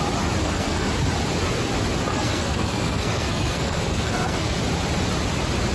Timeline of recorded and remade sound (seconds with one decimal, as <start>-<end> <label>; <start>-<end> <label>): 0.0-0.4 recorded; 0.4-0.9 remade; 0.9-2.1 recorded; 2.1-4.6 remade; 4.6-5.7 recorded